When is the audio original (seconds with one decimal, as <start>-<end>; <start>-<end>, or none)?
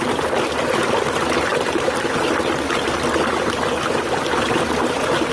0.0-5.3